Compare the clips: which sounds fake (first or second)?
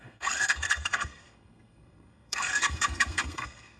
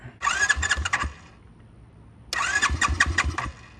first